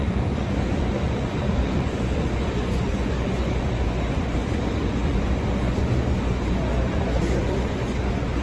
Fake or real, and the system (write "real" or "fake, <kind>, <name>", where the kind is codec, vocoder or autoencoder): fake, vocoder, Vocos